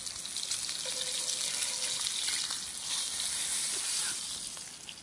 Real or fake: real